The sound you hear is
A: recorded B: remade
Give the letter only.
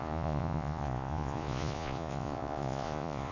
B